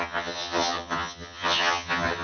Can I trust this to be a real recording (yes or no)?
no